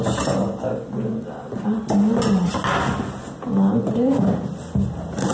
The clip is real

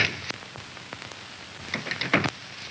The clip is real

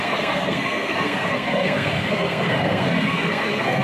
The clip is fake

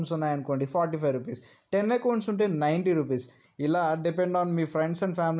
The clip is real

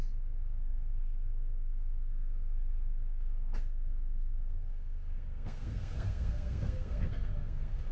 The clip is fake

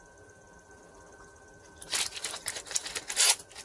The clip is real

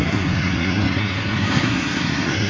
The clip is fake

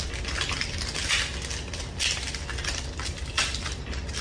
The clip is real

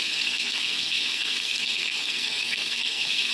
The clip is fake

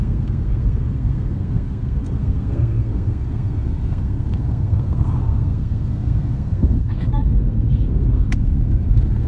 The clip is fake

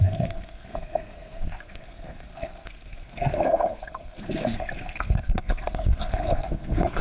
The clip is fake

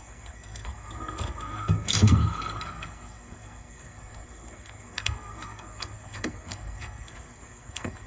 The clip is fake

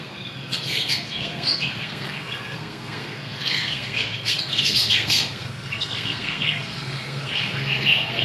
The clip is fake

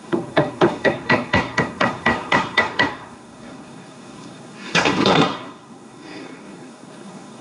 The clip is fake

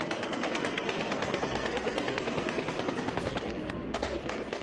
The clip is fake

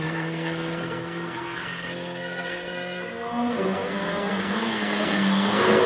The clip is fake